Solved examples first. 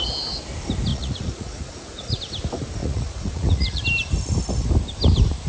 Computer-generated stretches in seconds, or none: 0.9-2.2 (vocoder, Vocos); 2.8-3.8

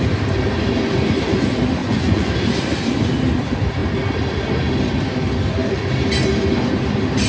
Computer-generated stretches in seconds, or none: 1.8-2.3 (vocoder, Vocos)

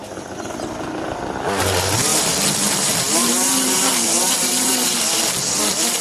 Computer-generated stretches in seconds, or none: none

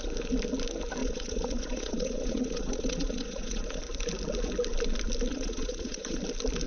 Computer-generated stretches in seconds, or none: 1.0-3.8 (vocoder, Vocos); 5.3-6.2

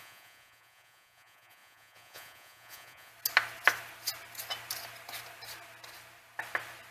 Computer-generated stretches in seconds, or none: 0.0-3.1 (vocoder, Vocos)

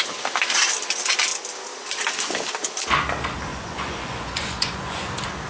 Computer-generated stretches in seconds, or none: 3.5-5.1 (vocoder, Vocos)

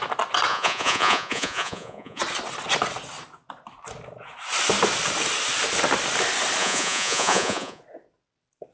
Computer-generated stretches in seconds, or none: 0.5-2.2 (vocoder, Vocos); 6.6-7.8

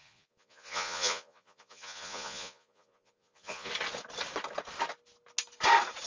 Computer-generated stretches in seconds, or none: 0.0-3.7 (vocoder, Vocos)